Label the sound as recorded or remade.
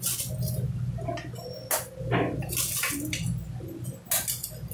recorded